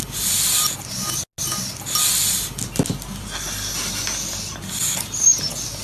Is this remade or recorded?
recorded